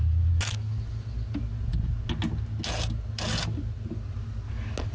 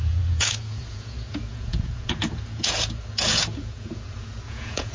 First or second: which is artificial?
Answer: second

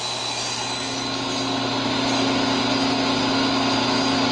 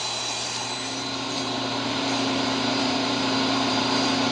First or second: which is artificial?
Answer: second